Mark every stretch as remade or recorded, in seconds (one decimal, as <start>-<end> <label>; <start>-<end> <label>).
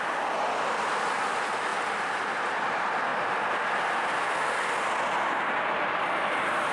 0.0-6.7 recorded